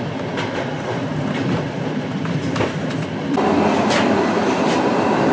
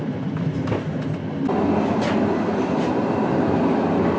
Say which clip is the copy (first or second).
first